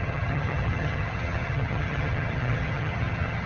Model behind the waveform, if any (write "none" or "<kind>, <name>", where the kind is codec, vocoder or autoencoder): vocoder, HiFi-GAN